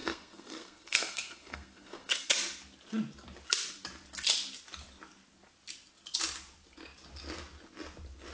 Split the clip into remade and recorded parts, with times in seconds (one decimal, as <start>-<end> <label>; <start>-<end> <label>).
0.0-2.3 remade; 2.3-8.3 recorded